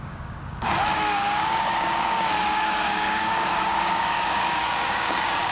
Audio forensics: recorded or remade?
remade